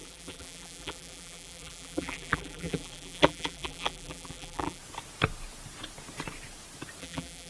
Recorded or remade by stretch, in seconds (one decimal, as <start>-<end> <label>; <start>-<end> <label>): 0.0-4.8 remade; 4.8-7.0 recorded; 7.0-7.5 remade